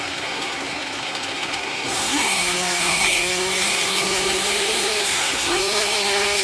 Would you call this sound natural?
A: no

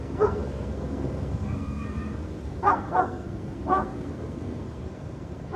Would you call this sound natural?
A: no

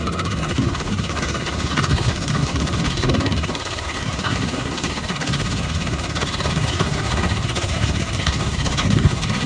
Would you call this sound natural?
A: no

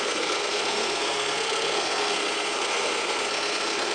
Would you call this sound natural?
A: no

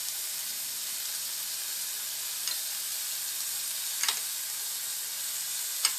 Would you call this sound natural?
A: yes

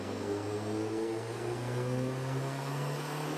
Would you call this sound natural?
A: no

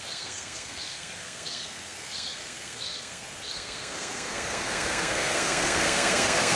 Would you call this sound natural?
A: no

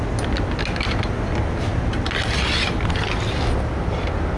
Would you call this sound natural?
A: yes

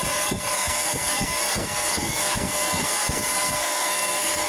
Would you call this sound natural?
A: no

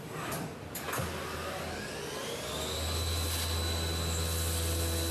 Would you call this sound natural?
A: yes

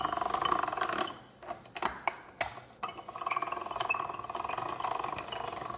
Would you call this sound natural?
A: yes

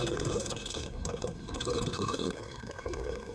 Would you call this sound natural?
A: no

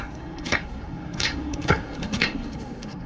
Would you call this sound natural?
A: no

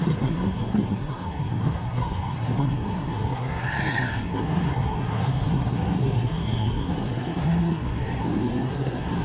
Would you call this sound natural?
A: no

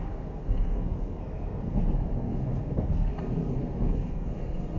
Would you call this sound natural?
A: no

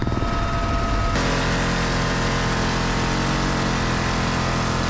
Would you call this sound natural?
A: yes